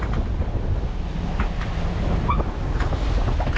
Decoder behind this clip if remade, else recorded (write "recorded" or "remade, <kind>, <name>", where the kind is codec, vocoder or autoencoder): recorded